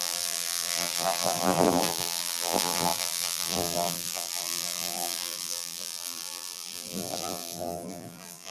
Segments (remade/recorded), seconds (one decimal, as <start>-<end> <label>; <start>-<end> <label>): 0.0-8.5 remade